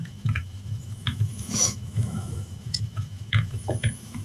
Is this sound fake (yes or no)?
yes